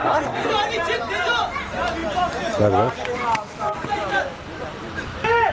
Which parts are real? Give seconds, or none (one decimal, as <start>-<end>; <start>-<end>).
0.5-5.5